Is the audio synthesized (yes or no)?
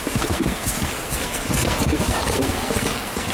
yes